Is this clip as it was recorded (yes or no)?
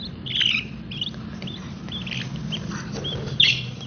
yes